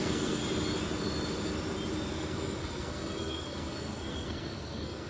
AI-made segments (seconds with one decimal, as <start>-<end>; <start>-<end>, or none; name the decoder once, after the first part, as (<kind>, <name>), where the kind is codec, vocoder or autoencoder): 0.0-0.4 (codec, SNAC); 2.1-5.1

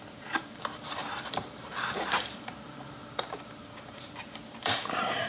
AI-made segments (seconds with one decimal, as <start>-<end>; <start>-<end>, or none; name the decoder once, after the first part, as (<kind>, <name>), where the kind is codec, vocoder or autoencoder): 0.0-5.3 (vocoder, BigVGAN v2)

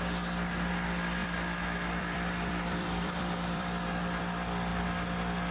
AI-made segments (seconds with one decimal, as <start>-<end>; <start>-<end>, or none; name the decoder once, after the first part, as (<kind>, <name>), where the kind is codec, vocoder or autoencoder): 1.2-4.2 (vocoder, BigVGAN v2)

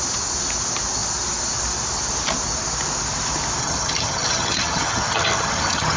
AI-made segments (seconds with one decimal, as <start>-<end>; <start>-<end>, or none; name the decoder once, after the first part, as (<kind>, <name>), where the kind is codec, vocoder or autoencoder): 3.6-6.0 (vocoder, HiFi-GAN)